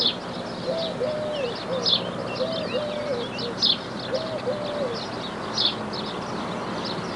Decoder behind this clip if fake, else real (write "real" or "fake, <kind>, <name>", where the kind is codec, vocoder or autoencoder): real